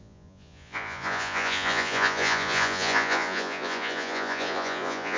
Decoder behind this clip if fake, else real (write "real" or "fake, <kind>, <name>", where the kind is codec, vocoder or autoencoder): fake, vocoder, Vocos